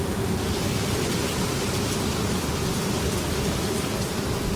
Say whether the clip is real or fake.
real